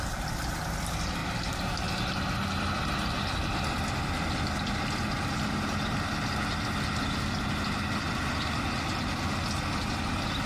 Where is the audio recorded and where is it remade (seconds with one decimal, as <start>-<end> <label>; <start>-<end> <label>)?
0.0-10.5 recorded